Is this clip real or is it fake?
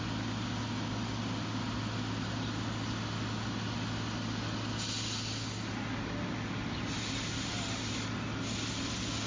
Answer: real